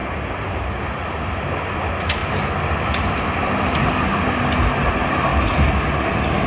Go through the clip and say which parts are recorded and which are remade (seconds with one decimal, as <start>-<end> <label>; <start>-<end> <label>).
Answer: 0.0-0.6 remade; 0.6-2.2 recorded; 2.2-4.4 remade; 4.4-6.5 recorded